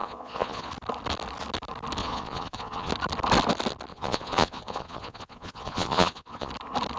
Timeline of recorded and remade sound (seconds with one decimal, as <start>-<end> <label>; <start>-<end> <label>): 0.0-0.7 remade; 0.7-2.0 recorded; 2.0-2.9 remade; 2.9-3.9 recorded; 3.9-6.5 remade; 6.5-7.0 recorded